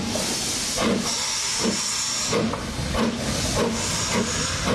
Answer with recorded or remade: recorded